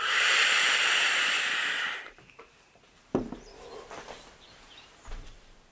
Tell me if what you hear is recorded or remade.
remade